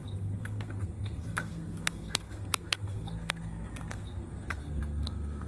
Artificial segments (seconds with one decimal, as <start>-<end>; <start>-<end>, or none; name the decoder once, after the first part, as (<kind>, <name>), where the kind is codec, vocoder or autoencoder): 0.0-5.5 (codec, SNAC)